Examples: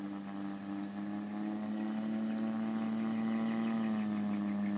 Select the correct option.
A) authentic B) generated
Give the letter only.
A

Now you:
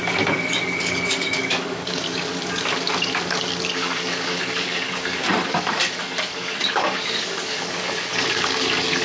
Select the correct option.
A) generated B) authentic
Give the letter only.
A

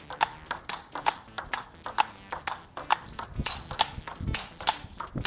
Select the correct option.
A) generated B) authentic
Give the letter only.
B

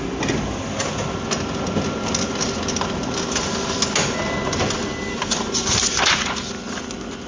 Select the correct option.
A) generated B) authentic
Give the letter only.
B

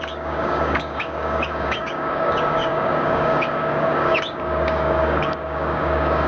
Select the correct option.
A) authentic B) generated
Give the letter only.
B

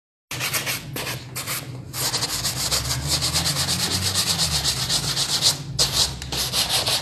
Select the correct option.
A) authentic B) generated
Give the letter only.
A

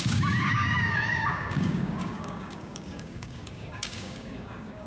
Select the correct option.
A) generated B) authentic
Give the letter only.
A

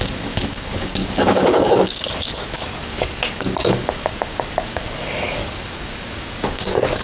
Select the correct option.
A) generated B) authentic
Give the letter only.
A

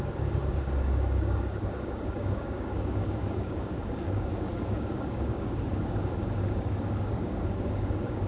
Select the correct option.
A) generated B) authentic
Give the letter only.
A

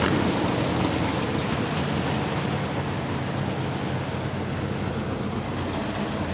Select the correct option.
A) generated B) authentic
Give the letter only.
B